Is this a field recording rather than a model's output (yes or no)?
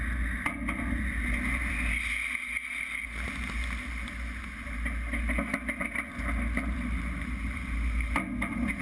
yes